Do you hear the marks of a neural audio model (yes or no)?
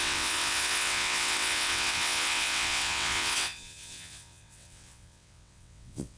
yes